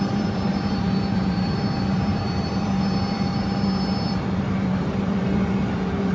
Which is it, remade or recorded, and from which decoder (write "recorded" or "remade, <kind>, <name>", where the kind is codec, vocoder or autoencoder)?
remade, vocoder, BigVGAN v2